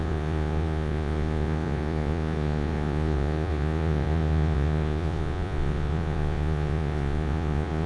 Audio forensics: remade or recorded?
remade